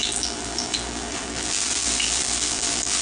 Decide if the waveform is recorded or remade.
remade